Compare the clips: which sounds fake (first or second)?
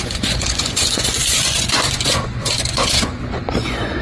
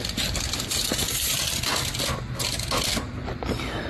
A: first